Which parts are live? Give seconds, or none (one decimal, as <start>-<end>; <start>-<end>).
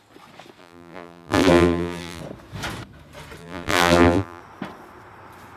0.0-0.6; 2.2-3.4; 4.4-5.6